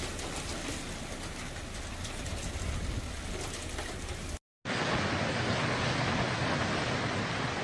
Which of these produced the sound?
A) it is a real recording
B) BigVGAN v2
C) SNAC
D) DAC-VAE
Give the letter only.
A